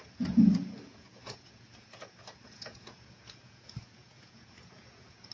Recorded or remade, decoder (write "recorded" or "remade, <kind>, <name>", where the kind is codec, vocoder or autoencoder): remade, vocoder, Vocos